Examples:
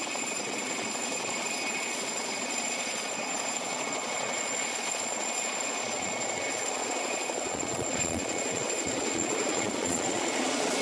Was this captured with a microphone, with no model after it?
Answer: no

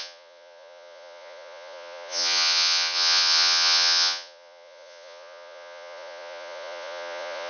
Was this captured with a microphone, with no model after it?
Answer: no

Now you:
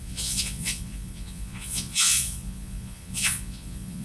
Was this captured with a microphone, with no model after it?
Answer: no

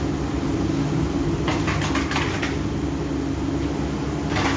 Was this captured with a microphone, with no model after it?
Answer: yes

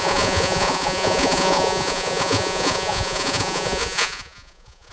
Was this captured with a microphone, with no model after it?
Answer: no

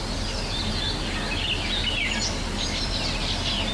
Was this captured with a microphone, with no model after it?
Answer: yes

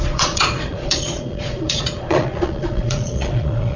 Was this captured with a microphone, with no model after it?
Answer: no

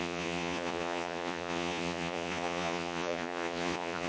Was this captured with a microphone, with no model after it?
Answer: no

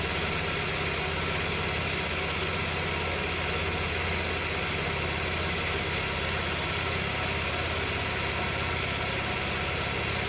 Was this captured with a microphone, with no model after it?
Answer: yes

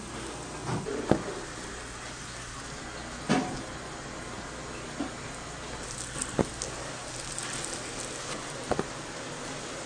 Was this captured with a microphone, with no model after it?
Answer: yes